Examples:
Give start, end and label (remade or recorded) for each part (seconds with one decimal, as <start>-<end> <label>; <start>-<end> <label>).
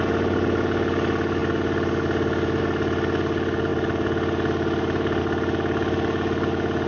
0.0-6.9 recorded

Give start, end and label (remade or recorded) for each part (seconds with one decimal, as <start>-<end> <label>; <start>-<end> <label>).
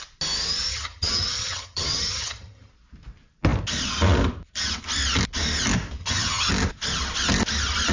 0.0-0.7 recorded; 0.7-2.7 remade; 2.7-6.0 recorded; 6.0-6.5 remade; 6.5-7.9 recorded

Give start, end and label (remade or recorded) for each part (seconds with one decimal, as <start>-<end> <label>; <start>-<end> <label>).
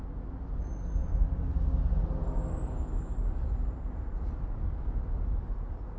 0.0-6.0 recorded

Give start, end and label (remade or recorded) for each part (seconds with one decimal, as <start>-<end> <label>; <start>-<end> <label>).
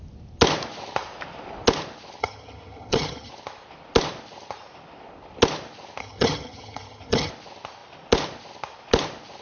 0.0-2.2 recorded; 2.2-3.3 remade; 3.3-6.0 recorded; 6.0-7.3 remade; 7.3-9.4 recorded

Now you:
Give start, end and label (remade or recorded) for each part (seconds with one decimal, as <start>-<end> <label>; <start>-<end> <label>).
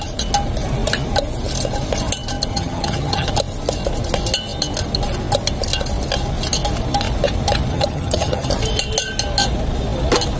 0.0-2.5 recorded; 2.5-3.3 remade; 3.3-7.7 recorded; 7.7-8.5 remade; 8.5-10.4 recorded